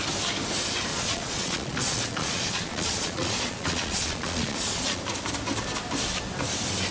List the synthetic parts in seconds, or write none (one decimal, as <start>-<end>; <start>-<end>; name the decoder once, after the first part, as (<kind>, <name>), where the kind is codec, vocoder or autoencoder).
0.9-5.0 (vocoder, Vocos)

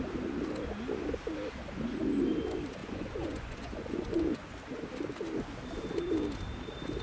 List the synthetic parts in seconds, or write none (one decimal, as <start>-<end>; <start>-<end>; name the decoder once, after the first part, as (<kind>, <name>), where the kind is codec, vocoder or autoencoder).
2.8-4.5 (vocoder, Vocos)

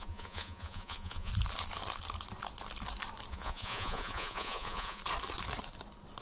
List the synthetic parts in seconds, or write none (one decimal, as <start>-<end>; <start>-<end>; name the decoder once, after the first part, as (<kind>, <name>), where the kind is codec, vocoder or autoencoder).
0.0-1.3 (vocoder, Vocos); 3.3-5.0

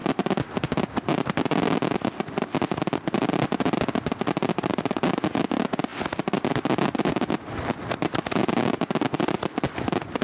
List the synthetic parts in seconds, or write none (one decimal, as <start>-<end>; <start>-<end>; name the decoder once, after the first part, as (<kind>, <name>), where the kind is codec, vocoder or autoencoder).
none

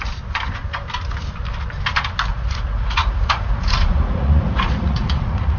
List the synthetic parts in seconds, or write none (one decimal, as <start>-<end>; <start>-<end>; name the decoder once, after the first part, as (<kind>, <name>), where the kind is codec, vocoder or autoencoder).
2.3-5.6 (vocoder, Vocos)

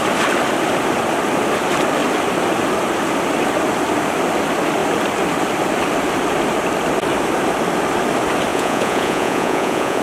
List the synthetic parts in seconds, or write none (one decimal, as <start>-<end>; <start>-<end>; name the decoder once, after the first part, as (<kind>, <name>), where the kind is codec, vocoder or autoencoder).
8.5-10.0 (vocoder, Vocos)

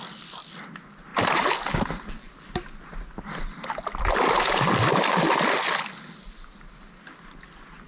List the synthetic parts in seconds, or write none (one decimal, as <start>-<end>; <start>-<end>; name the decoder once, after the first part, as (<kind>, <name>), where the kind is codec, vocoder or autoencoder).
none

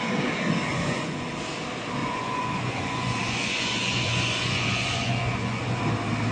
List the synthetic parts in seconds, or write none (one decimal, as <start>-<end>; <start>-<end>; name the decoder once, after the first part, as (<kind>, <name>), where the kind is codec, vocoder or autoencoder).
0.7-1.3 (vocoder, Vocos); 2.0-5.8